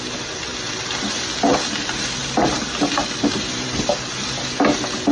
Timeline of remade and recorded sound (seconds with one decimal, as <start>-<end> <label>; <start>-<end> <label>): 0.0-0.5 recorded; 0.5-1.1 remade; 1.1-1.5 recorded; 1.5-3.9 remade; 3.9-5.1 recorded